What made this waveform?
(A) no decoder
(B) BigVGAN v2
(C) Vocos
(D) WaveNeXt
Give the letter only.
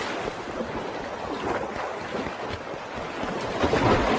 A